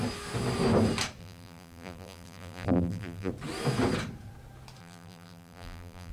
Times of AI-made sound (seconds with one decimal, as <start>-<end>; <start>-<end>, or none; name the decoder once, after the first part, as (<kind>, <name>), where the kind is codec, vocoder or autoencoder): 1.2-3.3 (vocoder, BigVGAN v2); 4.8-6.1